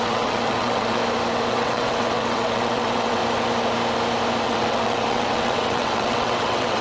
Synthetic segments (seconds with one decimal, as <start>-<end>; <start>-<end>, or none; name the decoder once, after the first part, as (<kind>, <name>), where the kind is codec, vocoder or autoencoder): 0.0-1.0 (vocoder, WaveNeXt); 1.5-3.2; 4.4-6.8

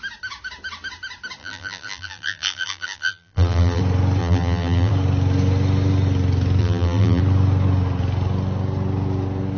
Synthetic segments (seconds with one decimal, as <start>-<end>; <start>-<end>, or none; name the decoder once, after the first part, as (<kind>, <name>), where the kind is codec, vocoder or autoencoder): 1.4-3.8 (vocoder, BigVGAN v2); 4.2-4.9; 6.6-7.2

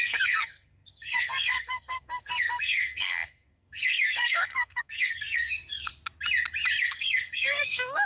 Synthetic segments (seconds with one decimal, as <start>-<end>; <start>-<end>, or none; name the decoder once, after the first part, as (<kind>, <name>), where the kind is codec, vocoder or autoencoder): 0.0-5.9 (codec, SNAC); 6.8-8.1

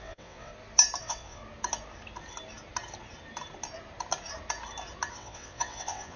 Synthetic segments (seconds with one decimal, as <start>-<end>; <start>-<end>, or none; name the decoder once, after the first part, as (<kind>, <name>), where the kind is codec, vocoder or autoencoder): 0.0-0.5 (vocoder, WaveNeXt); 1.0-1.4; 5.1-6.2

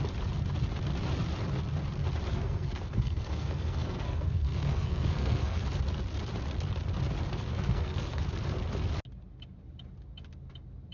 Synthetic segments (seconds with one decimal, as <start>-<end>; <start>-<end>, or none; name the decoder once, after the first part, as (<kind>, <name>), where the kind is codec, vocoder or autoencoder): 2.3-5.6 (codec, SNAC); 7.5-8.2

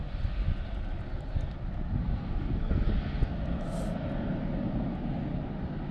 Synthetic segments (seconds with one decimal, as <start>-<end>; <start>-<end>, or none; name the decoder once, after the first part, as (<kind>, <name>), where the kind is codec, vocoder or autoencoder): 2.0-2.9 (codec, SNAC)